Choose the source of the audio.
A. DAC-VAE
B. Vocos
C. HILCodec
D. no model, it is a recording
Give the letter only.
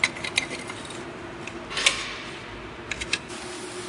D